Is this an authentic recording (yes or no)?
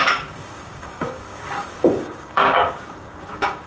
no